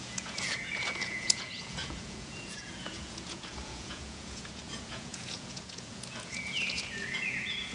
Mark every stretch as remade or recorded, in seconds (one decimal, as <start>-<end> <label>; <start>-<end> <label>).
0.0-7.7 remade